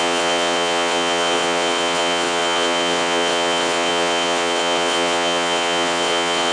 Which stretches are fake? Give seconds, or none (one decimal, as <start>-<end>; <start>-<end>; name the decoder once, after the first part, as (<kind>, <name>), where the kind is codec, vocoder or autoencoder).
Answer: 0.0-6.5 (vocoder, WaveNeXt)